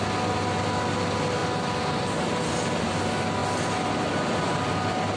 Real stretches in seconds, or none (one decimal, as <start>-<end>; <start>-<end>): 0.0-5.2